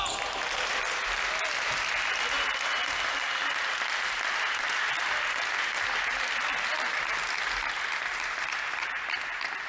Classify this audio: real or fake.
real